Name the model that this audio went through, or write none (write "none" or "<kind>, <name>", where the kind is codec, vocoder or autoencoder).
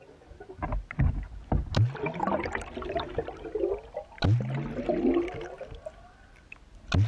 none